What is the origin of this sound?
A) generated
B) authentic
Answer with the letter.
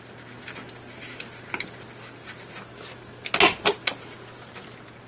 B